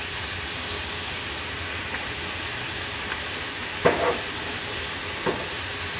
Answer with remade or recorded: recorded